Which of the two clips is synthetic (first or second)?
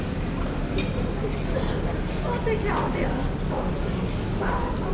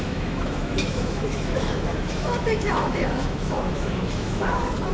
second